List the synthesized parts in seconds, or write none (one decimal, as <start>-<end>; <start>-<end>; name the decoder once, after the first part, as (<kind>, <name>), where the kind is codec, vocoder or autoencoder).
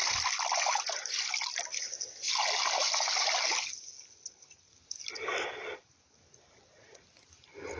none